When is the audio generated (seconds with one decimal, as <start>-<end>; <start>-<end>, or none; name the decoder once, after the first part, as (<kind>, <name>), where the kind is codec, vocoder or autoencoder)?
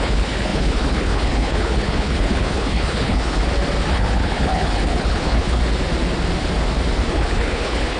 0.0-3.4 (codec, HILCodec); 3.9-5.6; 7.1-8.0